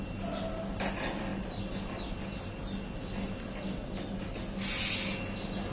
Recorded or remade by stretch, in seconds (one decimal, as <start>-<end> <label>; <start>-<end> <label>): 0.0-5.7 recorded